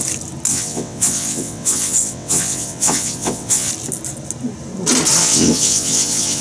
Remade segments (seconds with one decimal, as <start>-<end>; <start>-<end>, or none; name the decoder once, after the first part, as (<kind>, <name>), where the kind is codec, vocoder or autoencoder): 0.5-3.7 (vocoder, WaveNeXt); 5.2-6.4